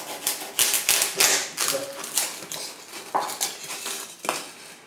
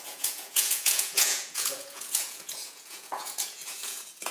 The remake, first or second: second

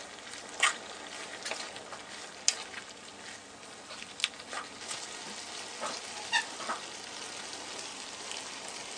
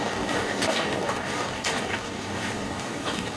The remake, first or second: second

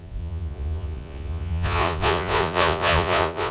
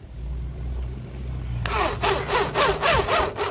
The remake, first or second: first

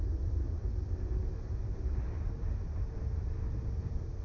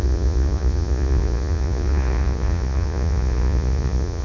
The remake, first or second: second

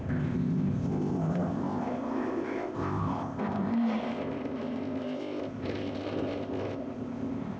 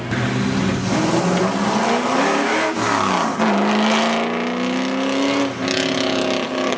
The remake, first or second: first